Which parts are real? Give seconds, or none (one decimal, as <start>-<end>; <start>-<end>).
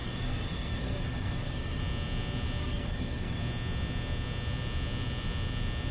1.8-2.6; 3.4-5.9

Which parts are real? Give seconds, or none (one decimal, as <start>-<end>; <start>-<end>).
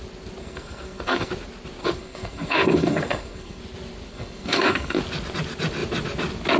0.0-0.4; 1.3-1.8; 3.6-4.1; 5.0-6.6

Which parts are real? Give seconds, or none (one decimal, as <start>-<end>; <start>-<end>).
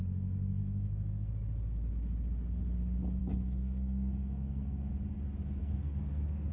0.0-0.6; 1.3-3.2; 4.9-5.6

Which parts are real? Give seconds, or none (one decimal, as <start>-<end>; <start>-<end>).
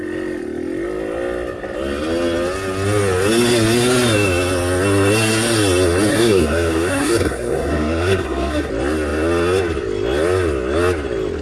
0.0-6.1; 8.7-11.4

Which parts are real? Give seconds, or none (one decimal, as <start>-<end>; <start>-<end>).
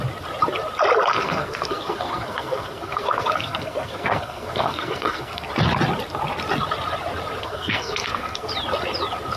0.0-1.1; 5.5-7.4; 8.5-9.4